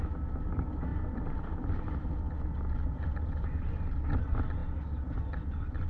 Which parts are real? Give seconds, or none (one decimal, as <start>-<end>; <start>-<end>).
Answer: 0.0-5.9